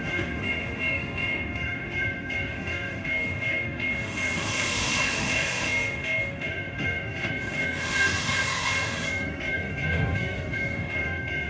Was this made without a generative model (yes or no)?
no